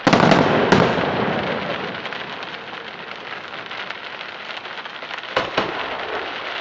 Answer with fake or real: real